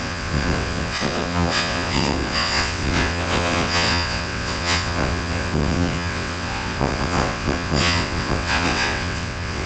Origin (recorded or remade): remade